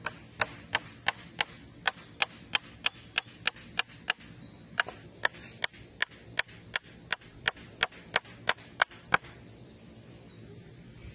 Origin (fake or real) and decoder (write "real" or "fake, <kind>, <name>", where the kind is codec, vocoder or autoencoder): real